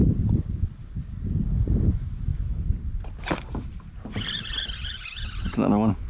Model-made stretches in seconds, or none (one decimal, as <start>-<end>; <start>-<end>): none